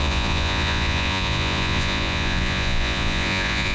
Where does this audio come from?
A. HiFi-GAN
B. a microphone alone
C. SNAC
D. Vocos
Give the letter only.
D